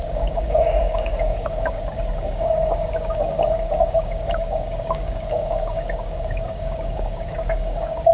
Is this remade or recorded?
remade